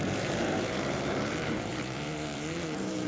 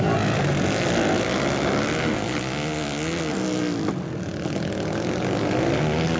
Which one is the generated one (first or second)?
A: first